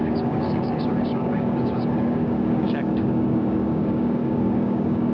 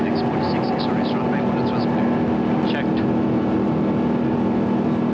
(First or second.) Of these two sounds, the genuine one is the second